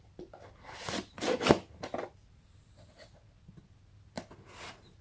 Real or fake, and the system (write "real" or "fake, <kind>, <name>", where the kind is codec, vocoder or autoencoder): real